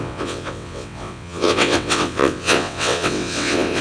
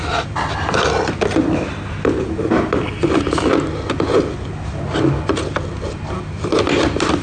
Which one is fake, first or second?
first